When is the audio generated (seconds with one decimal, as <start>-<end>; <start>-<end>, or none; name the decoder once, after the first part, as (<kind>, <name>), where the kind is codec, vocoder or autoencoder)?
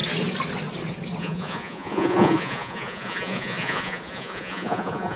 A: 1.2-5.2 (vocoder, Vocos)